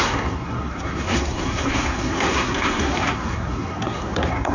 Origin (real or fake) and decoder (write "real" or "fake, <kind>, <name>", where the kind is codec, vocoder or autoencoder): fake, codec, SNAC